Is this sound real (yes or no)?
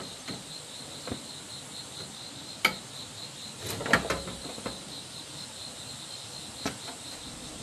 yes